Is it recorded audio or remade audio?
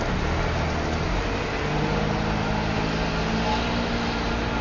recorded